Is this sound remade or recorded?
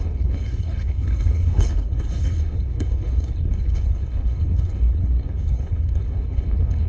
remade